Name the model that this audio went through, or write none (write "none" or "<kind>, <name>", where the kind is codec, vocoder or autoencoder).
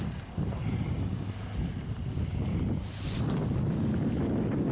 none